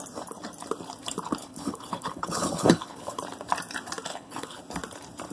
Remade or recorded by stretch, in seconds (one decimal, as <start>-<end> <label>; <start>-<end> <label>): 0.0-1.4 recorded; 1.4-3.2 remade; 3.2-4.1 recorded; 4.1-4.6 remade; 4.6-5.3 recorded